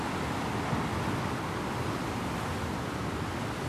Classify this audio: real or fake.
real